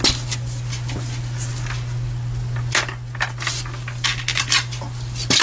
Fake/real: real